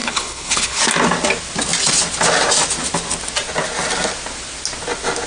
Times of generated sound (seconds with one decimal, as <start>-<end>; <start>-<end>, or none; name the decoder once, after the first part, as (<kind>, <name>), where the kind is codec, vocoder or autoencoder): 0.0-0.8 (codec, HILCodec)